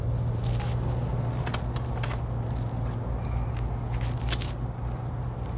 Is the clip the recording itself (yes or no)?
yes